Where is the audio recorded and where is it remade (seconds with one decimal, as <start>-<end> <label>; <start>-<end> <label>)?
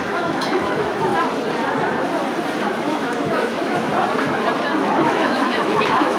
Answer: 0.0-1.1 remade; 1.1-2.8 recorded; 2.8-3.9 remade; 3.9-5.0 recorded; 5.0-6.2 remade